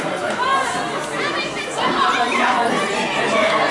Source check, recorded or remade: recorded